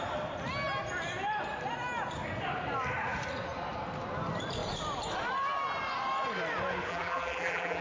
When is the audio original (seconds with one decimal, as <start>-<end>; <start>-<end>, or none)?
0.0-6.9